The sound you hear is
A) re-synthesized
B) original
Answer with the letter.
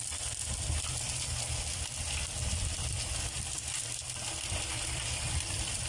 A